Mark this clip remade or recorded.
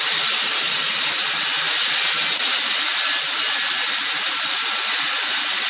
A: recorded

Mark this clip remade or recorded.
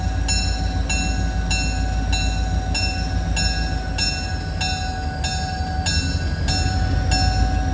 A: recorded